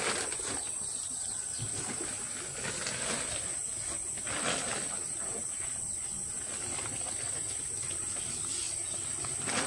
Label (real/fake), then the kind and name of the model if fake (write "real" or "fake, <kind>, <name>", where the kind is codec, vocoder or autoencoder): real